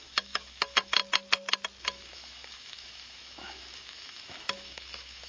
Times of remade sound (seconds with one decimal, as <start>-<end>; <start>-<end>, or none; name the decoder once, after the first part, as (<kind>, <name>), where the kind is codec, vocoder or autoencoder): 0.0-1.0 (autoencoder, DAC-VAE); 1.8-5.3